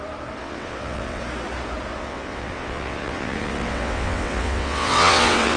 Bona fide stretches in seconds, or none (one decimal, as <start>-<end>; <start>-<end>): 0.0-0.4; 1.2-2.0